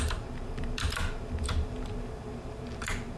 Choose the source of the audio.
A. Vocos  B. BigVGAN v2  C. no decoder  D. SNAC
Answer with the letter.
B